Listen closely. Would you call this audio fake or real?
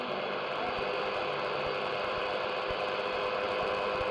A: real